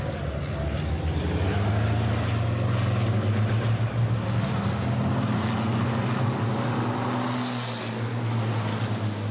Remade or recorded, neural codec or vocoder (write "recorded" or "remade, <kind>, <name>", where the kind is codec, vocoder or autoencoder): recorded